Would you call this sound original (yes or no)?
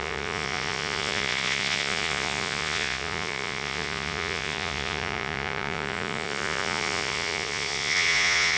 no